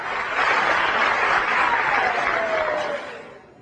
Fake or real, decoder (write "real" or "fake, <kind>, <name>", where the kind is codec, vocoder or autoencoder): real